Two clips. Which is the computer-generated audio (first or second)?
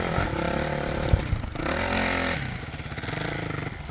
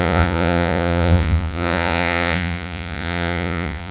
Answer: second